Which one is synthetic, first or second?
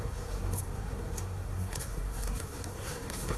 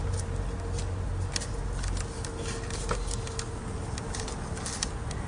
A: first